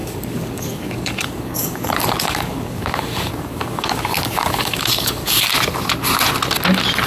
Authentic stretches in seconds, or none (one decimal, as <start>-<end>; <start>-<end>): 5.5-7.1